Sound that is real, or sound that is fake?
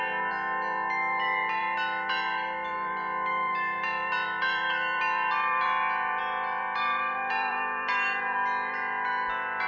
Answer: fake